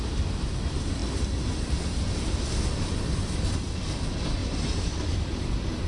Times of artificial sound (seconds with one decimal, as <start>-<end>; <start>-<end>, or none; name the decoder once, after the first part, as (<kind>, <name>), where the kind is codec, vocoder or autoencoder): 4.4-5.4 (vocoder, BigVGAN v2)